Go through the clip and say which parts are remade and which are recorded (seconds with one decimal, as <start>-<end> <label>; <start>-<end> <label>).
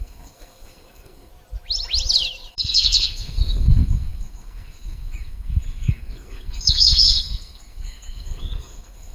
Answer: 0.0-1.3 remade; 1.3-2.5 recorded; 2.5-9.1 remade